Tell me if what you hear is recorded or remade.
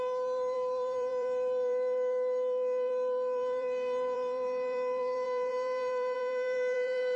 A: remade